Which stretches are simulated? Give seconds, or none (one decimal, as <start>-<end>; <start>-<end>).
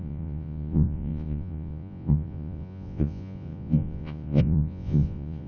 0.0-5.5